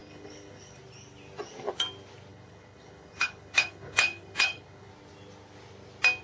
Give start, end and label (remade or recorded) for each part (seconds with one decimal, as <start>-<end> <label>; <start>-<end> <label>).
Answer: 0.0-0.8 remade; 0.8-2.3 recorded; 2.3-4.9 remade; 4.9-6.2 recorded